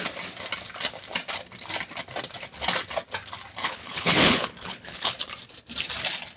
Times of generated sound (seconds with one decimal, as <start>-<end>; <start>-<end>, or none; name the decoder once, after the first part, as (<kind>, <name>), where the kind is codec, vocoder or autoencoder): 3.6-5.1 (codec, HILCodec)